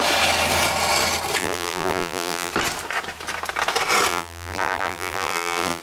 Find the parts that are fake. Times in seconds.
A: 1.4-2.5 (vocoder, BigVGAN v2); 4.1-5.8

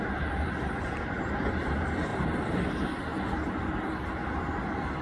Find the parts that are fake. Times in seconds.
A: 0.0-2.1 (vocoder, BigVGAN v2); 2.7-3.1

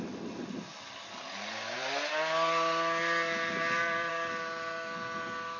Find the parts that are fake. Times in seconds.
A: 0.7-4.1 (vocoder, BigVGAN v2)

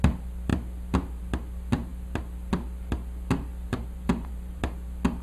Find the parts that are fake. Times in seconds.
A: 3.7-4.6 (vocoder, BigVGAN v2)